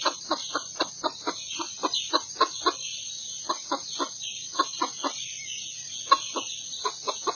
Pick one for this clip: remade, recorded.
recorded